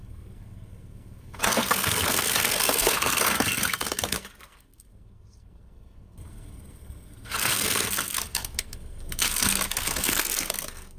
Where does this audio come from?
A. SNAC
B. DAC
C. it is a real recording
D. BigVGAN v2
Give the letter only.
A